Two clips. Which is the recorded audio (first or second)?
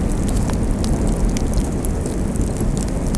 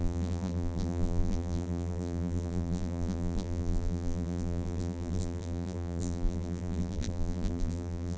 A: first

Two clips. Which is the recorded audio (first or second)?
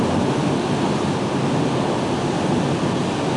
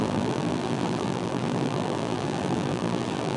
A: first